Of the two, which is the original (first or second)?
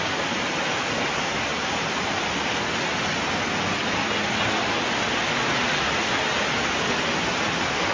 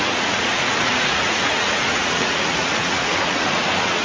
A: first